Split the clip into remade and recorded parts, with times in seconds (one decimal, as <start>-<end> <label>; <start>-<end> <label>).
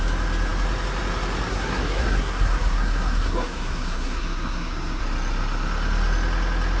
0.0-1.5 recorded; 1.5-5.0 remade; 5.0-6.8 recorded